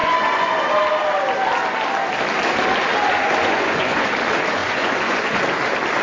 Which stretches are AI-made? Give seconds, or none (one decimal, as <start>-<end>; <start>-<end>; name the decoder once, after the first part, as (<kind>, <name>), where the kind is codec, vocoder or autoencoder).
0.0-0.6 (vocoder, Vocos); 3.4-4.1; 4.6-5.4